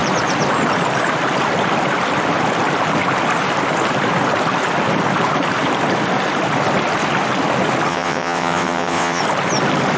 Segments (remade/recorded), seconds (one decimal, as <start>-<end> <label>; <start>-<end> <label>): 0.0-7.9 recorded; 7.9-9.2 remade; 9.2-10.0 recorded